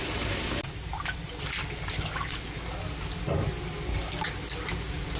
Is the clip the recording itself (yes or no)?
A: yes